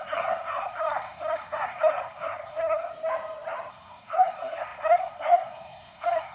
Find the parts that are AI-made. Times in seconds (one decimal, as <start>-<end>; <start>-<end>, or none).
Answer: 0.0-2.9; 3.7-6.3